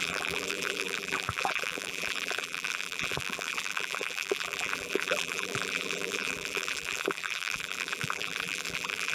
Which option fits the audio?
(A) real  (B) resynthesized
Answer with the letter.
B